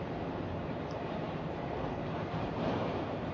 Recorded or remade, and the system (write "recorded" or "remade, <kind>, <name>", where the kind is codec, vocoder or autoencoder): remade, vocoder, BigVGAN v2